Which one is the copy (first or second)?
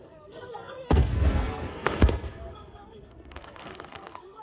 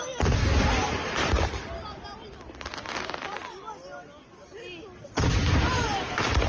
first